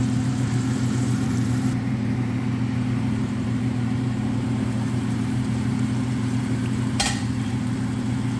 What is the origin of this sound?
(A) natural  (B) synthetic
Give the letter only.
B